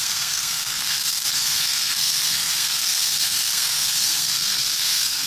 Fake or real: fake